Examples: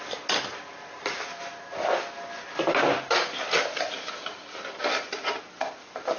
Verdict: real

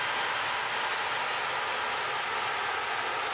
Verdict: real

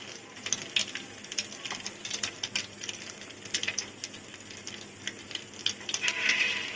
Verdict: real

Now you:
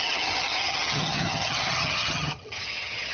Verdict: fake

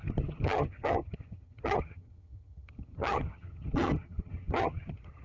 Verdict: fake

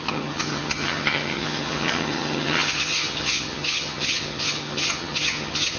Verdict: fake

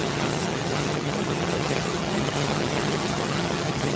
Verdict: fake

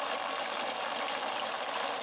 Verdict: real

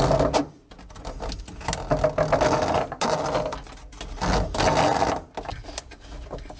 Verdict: real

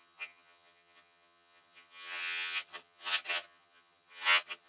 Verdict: fake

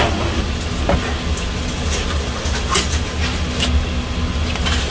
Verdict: real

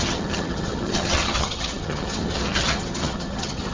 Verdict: fake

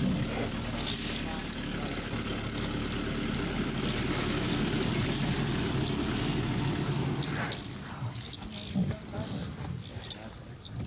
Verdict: real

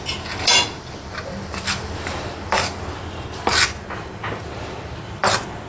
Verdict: real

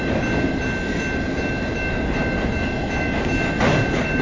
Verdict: real